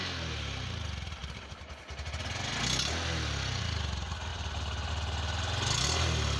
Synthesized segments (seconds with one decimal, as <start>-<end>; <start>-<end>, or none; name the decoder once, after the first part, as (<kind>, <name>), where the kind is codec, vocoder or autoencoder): 1.2-1.7 (vocoder, BigVGAN v2); 4.3-4.9